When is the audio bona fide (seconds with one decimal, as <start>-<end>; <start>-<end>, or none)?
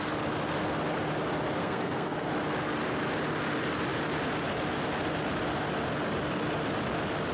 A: 0.0-1.6; 2.3-7.3